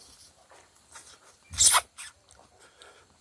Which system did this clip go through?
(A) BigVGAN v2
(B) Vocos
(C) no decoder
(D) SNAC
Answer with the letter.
C